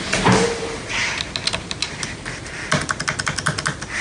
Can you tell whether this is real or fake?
real